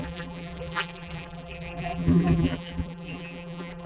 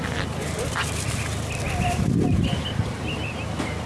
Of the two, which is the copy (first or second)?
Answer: first